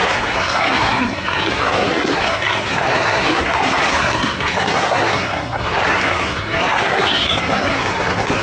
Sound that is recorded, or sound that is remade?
remade